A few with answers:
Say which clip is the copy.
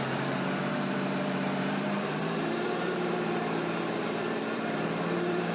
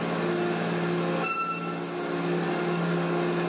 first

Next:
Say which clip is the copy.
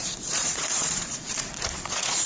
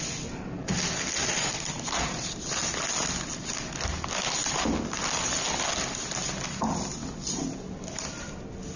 first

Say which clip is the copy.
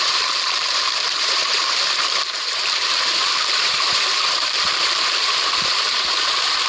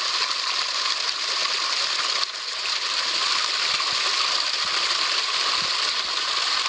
first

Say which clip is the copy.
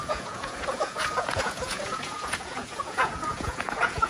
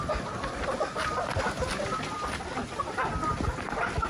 first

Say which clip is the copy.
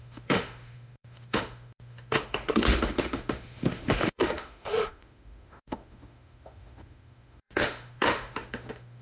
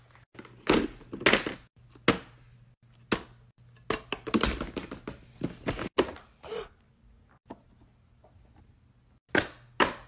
first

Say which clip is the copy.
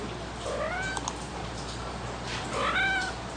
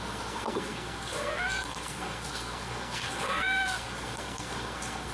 second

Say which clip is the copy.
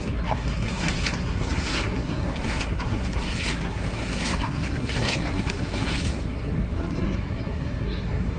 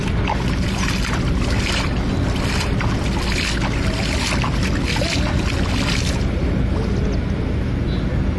first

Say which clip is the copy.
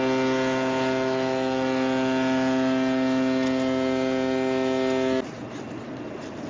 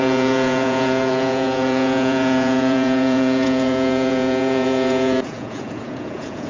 second